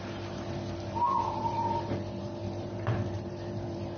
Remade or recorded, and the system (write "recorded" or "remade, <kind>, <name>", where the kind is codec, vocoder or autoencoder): remade, vocoder, BigVGAN v2